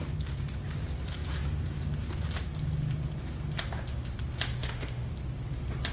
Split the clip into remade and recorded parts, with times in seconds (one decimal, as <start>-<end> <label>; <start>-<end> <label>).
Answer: 0.0-4.6 recorded; 4.6-5.1 remade; 5.1-5.9 recorded